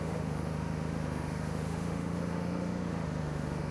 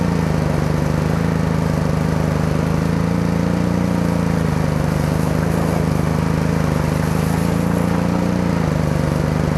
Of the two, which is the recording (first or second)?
second